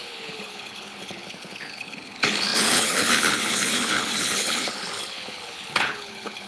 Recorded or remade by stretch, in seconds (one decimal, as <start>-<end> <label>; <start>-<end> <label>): 0.0-6.5 remade